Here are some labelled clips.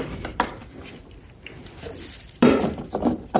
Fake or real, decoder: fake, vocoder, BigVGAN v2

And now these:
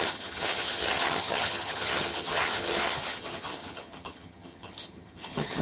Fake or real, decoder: fake, vocoder, HiFi-GAN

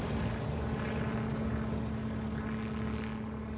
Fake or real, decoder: real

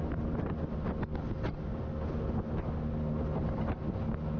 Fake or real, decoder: real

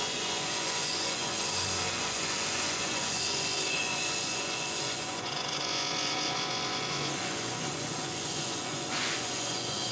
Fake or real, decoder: fake, vocoder, Vocos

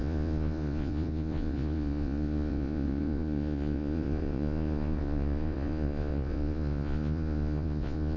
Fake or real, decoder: fake, vocoder, Vocos